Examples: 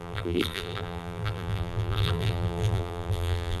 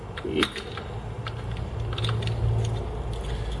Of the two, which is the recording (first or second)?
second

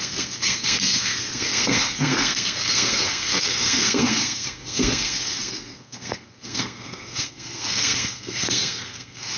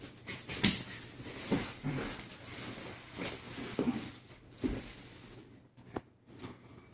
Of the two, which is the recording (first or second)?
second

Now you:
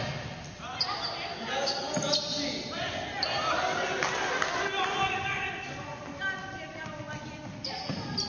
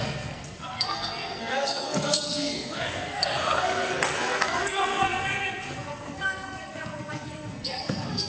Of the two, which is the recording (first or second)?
first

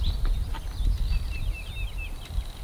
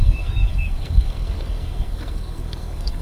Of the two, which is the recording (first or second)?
first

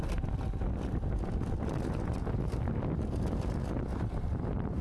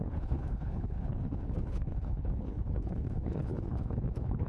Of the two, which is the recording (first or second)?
first